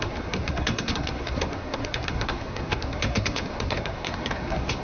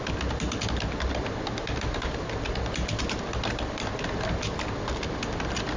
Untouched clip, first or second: second